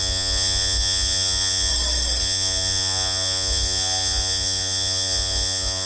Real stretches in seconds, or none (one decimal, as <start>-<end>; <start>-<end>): 1.7-2.2